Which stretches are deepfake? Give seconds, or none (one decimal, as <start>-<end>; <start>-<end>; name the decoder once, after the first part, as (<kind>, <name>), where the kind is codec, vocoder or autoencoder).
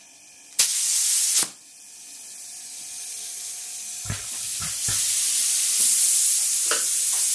none